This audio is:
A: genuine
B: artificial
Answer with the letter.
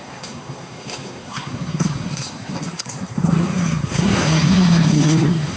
B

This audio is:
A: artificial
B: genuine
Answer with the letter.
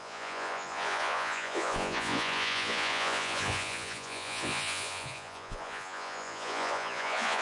A